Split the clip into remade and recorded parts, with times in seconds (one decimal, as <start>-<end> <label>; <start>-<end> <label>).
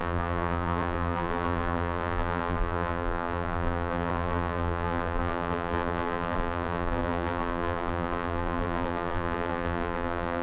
0.0-10.4 remade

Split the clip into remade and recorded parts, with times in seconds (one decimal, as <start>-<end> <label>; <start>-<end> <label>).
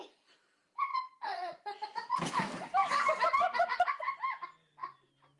0.0-0.9 recorded; 0.9-2.3 remade; 2.3-2.8 recorded; 2.8-4.2 remade; 4.2-5.4 recorded